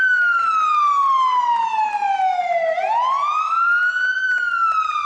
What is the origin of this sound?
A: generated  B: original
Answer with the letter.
B